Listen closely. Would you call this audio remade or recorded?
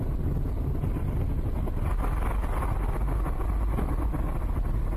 recorded